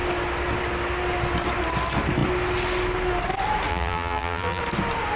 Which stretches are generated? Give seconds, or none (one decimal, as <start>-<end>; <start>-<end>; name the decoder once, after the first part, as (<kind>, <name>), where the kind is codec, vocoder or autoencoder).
3.7-4.6 (vocoder, BigVGAN v2)